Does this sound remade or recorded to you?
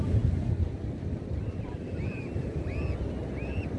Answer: recorded